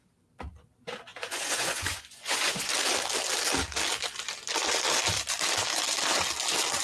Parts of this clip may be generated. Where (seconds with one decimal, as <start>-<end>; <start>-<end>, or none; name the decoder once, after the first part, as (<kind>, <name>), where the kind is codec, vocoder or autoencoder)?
1.1-2.7 (vocoder, Vocos)

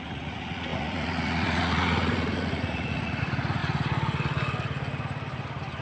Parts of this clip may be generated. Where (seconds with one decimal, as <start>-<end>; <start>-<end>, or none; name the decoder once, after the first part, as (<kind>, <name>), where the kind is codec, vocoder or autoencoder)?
0.0-3.6 (vocoder, Vocos)

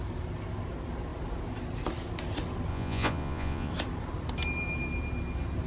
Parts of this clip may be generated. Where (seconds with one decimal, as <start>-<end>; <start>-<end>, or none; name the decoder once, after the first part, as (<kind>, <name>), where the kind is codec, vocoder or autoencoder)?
2.7-3.7 (vocoder, Vocos)

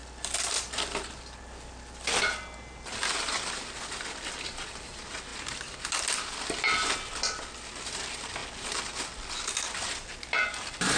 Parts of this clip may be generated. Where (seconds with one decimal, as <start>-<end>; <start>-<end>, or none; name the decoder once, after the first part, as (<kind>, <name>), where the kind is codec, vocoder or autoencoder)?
none

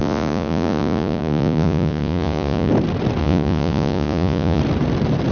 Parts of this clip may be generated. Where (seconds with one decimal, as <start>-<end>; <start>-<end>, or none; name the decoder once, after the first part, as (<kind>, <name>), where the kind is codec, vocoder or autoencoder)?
0.0-2.7 (vocoder, Vocos); 3.2-4.6

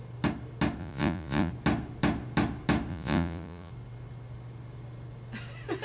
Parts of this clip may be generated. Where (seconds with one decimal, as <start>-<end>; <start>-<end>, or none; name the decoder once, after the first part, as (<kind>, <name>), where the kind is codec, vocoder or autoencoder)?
0.8-1.5 (vocoder, Vocos); 2.9-3.7

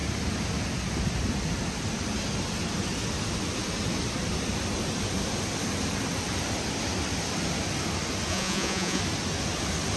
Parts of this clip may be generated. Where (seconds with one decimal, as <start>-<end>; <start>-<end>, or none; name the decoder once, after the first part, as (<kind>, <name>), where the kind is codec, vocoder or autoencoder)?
8.3-9.0 (vocoder, Vocos)

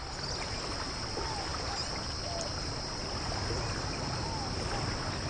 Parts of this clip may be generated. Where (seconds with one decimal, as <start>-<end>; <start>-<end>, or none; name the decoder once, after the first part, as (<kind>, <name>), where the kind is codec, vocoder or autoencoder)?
none